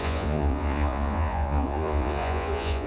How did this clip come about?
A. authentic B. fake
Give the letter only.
B